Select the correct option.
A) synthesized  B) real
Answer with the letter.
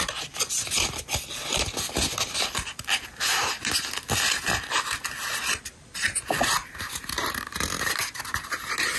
B